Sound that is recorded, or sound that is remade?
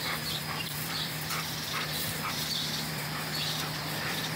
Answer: remade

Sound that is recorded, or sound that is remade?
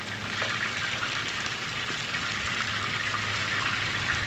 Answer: recorded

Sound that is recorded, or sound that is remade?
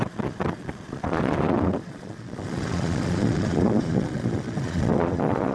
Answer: remade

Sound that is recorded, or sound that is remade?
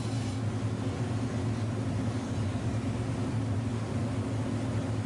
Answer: recorded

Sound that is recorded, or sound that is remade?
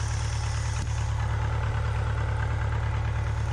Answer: recorded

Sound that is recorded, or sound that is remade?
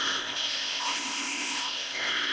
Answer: remade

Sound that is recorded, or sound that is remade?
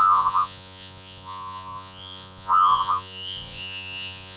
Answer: remade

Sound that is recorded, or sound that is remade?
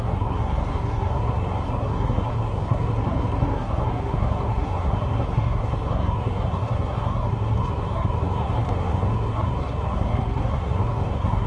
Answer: remade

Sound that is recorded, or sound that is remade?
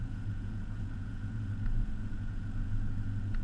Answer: remade